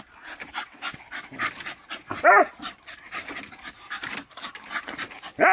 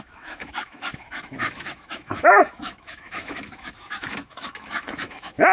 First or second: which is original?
first